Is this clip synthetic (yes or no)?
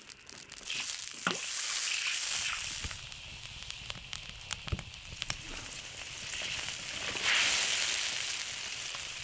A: no